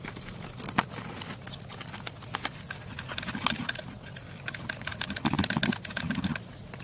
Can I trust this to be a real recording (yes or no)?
yes